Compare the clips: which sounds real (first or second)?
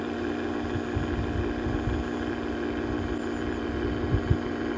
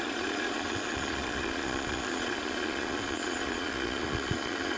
first